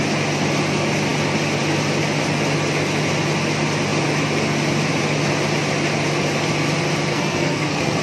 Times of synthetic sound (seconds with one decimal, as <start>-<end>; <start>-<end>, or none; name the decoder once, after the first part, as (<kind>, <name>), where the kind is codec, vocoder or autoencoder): 7.1-8.0 (codec, SNAC)